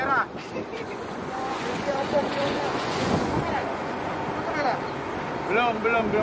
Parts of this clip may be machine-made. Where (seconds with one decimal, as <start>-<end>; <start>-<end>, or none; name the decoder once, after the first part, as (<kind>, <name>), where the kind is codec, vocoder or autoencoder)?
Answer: 0.7-4.2 (vocoder, Vocos)